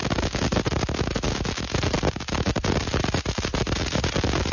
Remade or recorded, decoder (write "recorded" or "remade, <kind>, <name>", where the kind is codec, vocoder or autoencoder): recorded